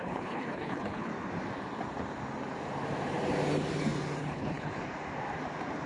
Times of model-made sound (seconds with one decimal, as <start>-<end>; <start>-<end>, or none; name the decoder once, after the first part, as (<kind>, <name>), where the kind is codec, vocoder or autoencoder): 0.0-1.1 (codec, HILCodec); 4.2-4.7